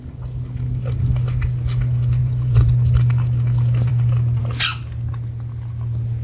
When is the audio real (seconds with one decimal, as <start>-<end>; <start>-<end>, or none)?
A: 0.0-2.2; 2.7-6.2